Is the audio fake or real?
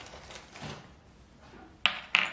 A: real